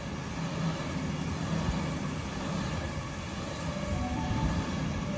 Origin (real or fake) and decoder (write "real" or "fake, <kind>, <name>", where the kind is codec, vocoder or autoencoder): real